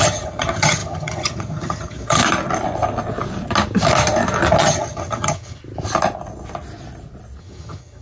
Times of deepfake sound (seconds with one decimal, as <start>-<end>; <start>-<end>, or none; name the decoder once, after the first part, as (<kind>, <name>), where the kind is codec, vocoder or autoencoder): 0.0-2.2 (vocoder, HiFi-GAN); 4.6-5.6; 7.4-8.0